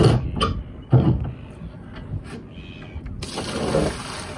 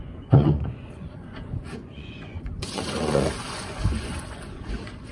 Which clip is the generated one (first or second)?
second